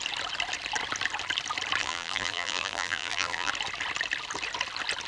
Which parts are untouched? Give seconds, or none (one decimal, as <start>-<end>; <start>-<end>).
0.0-1.8; 3.5-5.1